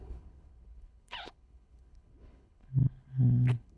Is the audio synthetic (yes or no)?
yes